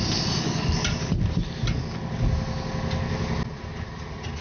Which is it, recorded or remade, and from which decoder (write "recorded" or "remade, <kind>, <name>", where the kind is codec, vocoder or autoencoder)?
recorded